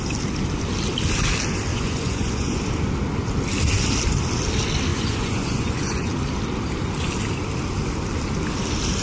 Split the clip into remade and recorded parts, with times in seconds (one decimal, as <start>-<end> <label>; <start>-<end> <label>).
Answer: 0.0-1.7 recorded; 1.7-2.6 remade; 2.6-4.9 recorded; 4.9-6.1 remade; 6.1-9.0 recorded